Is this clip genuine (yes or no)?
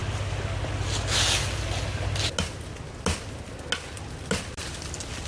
yes